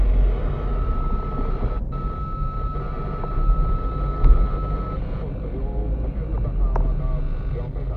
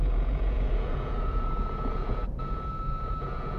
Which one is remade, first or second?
second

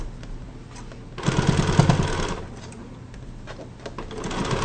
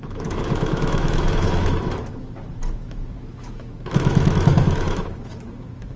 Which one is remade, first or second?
second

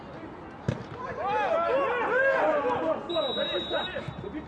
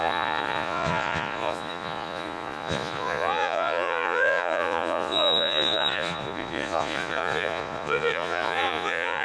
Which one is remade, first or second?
second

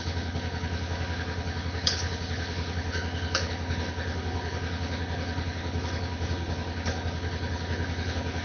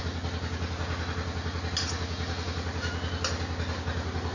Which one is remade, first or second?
first